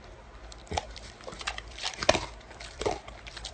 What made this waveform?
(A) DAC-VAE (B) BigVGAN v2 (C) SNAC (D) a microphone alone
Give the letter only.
B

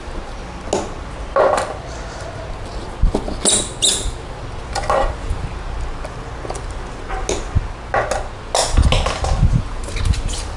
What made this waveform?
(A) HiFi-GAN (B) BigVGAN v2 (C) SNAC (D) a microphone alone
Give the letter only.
D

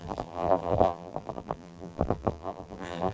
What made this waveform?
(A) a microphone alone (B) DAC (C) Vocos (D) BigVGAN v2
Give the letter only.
D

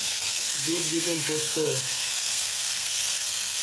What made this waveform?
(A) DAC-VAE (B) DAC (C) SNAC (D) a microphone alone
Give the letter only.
C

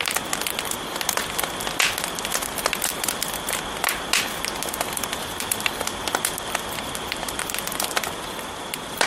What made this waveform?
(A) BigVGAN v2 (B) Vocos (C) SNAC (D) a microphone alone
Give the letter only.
D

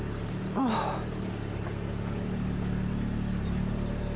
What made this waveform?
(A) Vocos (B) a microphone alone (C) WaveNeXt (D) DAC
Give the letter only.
B